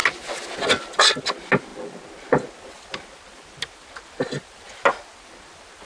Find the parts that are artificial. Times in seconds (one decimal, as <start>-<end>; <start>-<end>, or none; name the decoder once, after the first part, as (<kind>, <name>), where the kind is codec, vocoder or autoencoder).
none